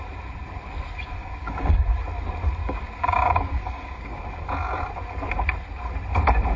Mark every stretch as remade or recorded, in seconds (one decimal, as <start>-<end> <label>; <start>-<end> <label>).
0.0-1.2 recorded; 1.2-1.8 remade; 1.8-2.6 recorded; 2.6-4.2 remade; 4.2-6.6 recorded